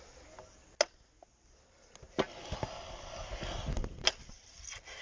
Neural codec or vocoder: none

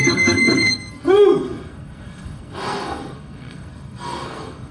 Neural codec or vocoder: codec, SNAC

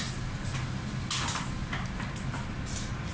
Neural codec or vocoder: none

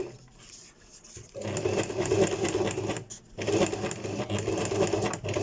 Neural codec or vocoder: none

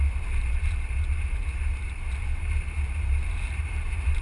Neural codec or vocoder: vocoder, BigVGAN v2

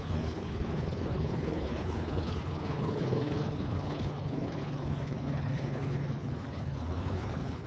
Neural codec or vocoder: codec, HILCodec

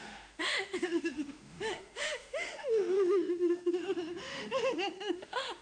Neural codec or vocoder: autoencoder, DAC-VAE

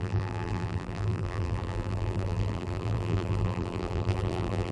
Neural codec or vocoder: vocoder, BigVGAN v2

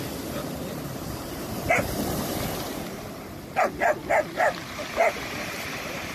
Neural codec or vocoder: none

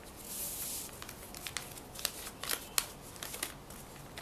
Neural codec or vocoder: none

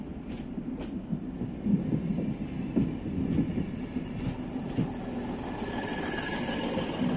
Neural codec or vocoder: none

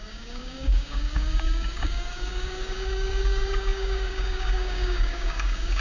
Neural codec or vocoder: codec, DAC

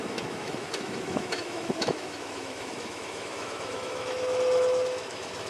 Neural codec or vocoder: autoencoder, DAC-VAE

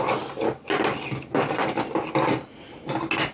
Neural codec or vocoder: none